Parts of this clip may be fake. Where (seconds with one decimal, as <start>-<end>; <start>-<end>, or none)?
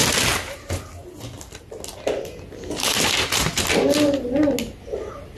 none